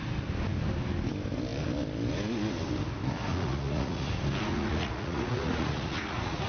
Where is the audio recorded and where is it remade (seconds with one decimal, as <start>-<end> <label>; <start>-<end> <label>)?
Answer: 0.0-3.3 recorded; 3.3-4.1 remade; 4.1-4.5 recorded; 4.5-6.5 remade